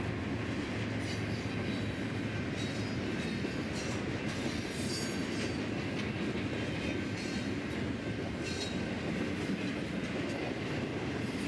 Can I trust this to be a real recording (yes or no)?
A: yes